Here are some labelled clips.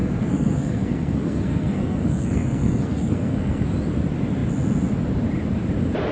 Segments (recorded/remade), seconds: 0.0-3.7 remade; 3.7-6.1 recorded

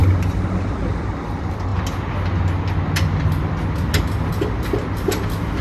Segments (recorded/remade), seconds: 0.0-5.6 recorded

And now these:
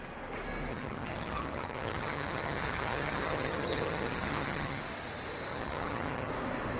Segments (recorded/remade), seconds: 0.0-0.7 recorded; 0.7-4.8 remade; 4.8-5.5 recorded; 5.5-6.3 remade; 6.3-6.8 recorded